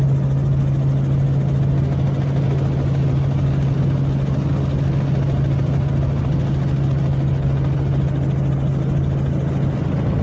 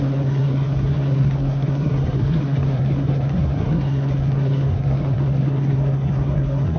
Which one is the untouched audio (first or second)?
first